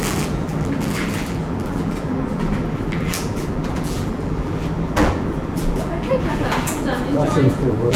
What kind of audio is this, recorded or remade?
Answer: remade